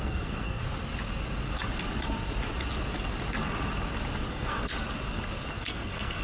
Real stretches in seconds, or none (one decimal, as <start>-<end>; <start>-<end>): 0.6-4.3; 4.7-5.5